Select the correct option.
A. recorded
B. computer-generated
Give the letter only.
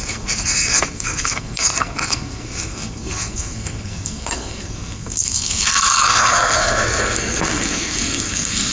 B